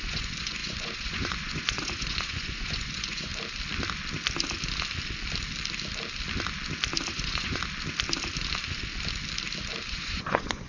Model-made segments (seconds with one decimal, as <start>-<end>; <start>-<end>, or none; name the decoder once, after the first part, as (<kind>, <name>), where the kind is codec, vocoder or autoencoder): 0.0-3.3 (vocoder, Vocos); 7.1-7.6; 9.9-10.7